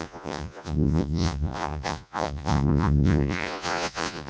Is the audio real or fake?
fake